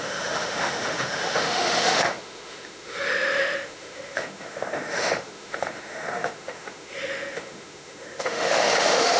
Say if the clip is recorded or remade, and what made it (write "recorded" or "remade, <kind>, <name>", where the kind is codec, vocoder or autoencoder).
remade, autoencoder, DAC-VAE